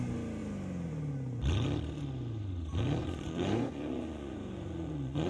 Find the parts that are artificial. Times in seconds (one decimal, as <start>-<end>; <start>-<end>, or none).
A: 3.0-5.3